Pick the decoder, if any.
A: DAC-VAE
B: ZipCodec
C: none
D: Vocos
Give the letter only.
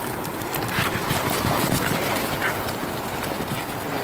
C